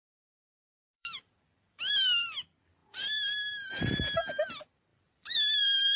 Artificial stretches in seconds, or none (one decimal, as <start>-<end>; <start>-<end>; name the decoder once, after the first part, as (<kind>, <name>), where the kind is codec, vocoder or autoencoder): 0.5-1.9 (vocoder, BigVGAN v2); 2.8-3.7; 4.9-6.0

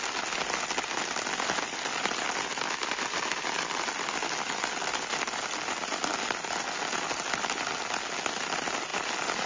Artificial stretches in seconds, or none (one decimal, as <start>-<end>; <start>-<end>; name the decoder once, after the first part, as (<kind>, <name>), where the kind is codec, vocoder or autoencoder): none